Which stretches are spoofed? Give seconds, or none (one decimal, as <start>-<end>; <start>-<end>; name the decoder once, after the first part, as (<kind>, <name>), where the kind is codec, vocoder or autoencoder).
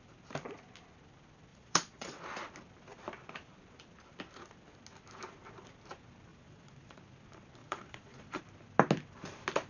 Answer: 1.5-2.2 (vocoder, Vocos); 6.3-7.0; 7.6-8.4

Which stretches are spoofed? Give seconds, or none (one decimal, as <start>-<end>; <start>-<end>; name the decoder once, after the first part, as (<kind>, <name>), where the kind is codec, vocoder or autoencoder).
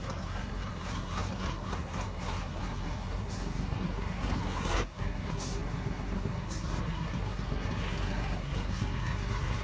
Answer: 0.0-9.6 (codec, SNAC)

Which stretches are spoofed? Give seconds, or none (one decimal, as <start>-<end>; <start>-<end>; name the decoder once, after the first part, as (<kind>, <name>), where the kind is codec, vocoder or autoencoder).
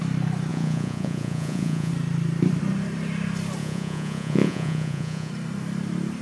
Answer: 0.5-1.9 (vocoder, Vocos); 3.6-5.3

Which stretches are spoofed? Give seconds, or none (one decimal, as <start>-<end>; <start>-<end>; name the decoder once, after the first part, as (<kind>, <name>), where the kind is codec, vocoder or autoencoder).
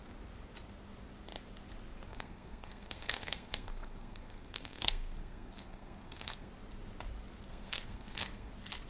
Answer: 2.1-6.5 (codec, SNAC); 7.5-8.5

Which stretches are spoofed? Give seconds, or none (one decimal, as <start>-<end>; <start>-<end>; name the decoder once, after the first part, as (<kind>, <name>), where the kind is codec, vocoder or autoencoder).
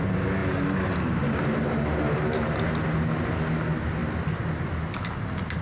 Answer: none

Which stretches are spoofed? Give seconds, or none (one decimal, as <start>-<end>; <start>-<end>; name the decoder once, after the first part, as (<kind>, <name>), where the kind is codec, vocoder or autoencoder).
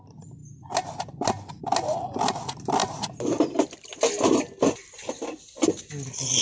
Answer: 2.8-3.4 (vocoder, BigVGAN v2)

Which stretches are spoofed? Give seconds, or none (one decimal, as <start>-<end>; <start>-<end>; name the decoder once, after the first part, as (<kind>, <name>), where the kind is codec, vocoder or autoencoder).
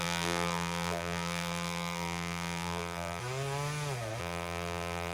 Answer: 0.0-3.2 (vocoder, BigVGAN v2); 4.2-5.1